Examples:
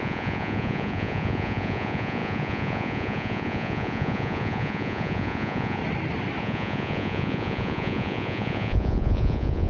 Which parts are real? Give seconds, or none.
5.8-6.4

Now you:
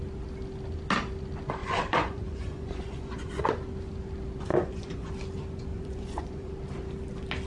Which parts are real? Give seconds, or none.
0.0-1.6; 3.5-4.5; 5.1-5.7; 6.5-7.5

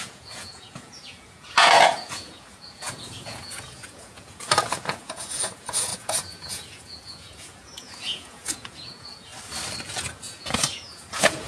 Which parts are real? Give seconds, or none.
9.3-9.9

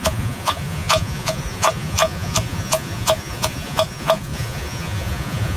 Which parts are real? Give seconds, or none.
none

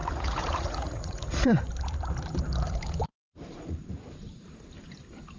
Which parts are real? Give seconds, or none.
1.7-3.1; 3.9-5.4

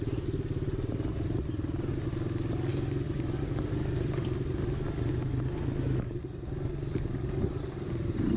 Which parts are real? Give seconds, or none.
0.0-8.4